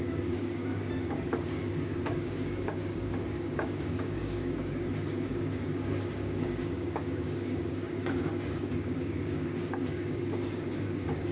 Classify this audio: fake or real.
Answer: fake